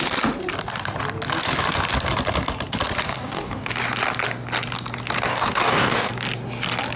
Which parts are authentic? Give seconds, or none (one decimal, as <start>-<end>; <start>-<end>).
0.0-3.1; 3.7-5.3; 6.1-7.0